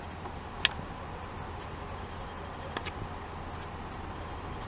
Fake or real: real